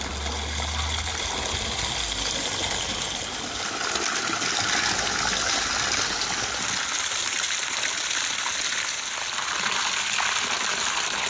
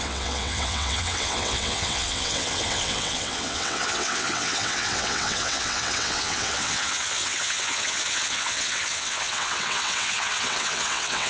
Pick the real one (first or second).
first